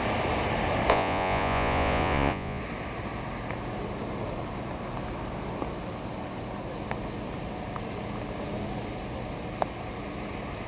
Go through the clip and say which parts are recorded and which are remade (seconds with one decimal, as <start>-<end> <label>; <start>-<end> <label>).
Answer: 0.0-0.9 recorded; 0.9-2.6 remade; 2.6-10.7 recorded